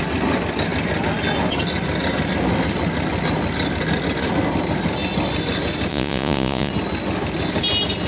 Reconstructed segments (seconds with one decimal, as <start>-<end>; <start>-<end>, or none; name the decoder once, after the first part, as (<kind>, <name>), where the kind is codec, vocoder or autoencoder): 5.9-6.7 (vocoder, Vocos)